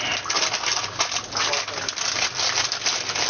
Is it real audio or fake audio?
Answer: real